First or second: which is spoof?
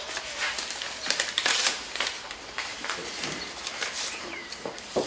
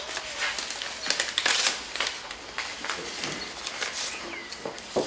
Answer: first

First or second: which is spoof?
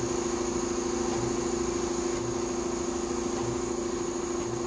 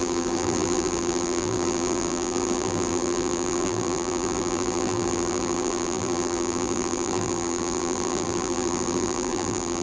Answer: second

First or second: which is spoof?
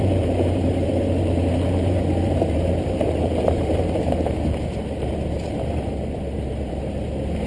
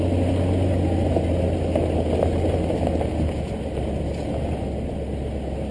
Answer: first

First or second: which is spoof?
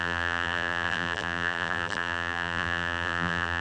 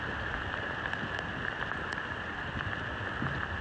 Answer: first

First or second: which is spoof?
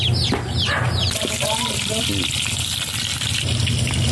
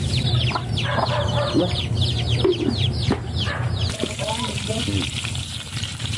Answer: second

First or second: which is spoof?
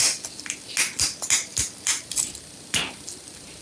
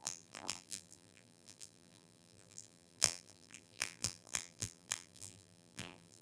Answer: second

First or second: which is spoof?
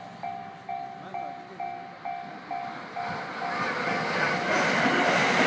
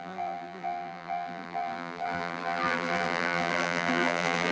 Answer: second